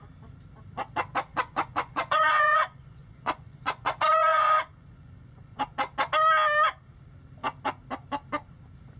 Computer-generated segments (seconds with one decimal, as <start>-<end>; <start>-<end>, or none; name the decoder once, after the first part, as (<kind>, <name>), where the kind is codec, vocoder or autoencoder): 1.3-5.6 (vocoder, Vocos)